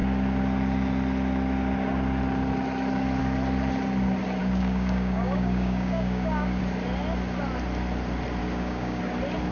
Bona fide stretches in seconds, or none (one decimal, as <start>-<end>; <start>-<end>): 0.0-4.4; 6.6-8.4; 9.0-9.5